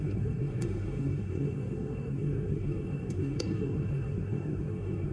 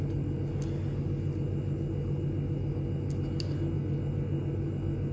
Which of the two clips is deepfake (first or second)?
first